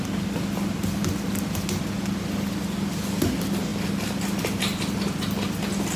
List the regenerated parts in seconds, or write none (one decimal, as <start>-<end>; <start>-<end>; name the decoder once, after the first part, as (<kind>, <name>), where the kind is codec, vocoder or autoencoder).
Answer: none